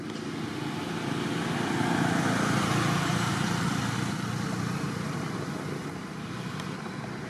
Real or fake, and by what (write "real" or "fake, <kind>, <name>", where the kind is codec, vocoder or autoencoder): real